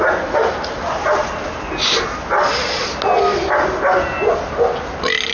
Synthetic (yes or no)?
no